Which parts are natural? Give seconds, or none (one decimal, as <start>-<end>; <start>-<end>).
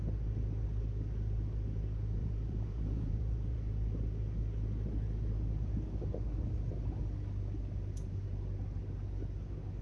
0.0-2.2; 3.6-9.8